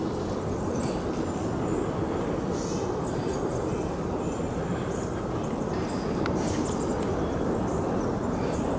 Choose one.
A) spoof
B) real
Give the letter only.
B